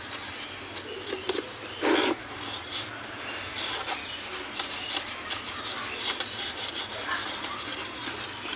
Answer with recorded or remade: recorded